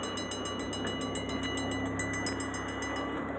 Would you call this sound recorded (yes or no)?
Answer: yes